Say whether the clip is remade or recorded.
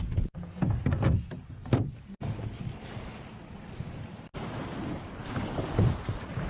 recorded